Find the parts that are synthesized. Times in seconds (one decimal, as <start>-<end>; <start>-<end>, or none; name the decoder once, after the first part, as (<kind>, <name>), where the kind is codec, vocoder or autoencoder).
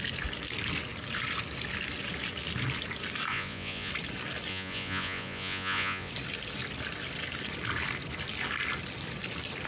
3.3-3.9 (vocoder, Vocos); 4.5-6.1